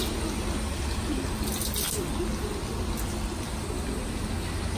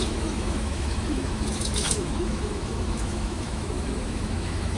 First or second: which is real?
first